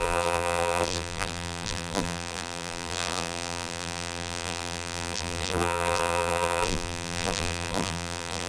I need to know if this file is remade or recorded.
remade